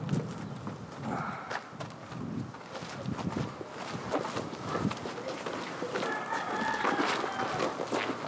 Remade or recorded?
recorded